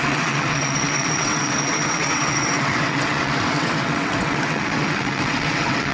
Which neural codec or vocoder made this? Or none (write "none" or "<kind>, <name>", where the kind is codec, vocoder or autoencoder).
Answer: vocoder, WaveNeXt